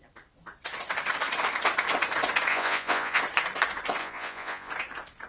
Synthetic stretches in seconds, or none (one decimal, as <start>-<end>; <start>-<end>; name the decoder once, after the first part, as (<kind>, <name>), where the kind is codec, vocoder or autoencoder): 2.5-3.2 (vocoder, Vocos); 4.0-4.7